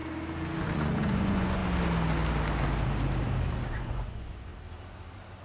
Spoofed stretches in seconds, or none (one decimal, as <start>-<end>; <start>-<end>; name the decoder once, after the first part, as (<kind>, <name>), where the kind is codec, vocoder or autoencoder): 0.6-1.6 (vocoder, Vocos); 3.7-4.5

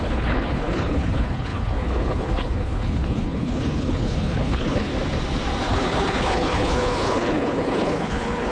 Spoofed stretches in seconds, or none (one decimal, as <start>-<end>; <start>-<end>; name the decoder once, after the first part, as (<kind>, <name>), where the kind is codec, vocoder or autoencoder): 0.0-4.9 (codec, HILCodec); 5.6-8.5

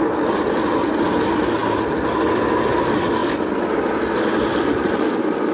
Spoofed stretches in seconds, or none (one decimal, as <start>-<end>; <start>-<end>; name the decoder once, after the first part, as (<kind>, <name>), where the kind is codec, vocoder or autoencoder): none

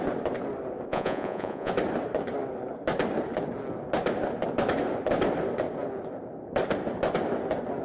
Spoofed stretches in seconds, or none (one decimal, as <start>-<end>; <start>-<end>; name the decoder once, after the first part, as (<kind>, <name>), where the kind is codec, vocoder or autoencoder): 0.9-1.7 (vocoder, Vocos)